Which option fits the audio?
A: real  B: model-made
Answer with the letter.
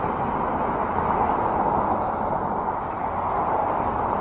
A